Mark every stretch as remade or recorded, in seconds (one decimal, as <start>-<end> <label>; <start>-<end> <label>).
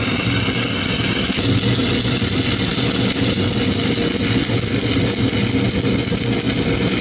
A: 0.0-7.0 recorded